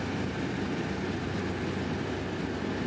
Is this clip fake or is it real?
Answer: real